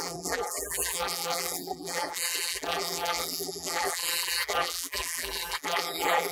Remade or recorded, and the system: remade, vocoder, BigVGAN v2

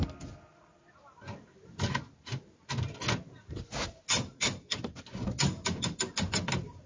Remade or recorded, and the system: recorded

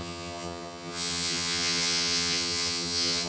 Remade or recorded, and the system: remade, vocoder, HiFi-GAN